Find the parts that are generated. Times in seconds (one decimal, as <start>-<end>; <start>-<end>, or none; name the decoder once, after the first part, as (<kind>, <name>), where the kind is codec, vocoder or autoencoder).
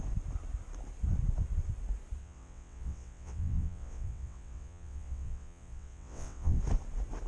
2.2-6.6 (vocoder, WaveNeXt)